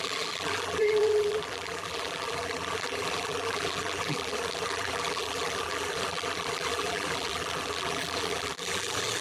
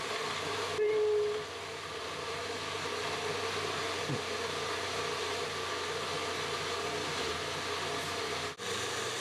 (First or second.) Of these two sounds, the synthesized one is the first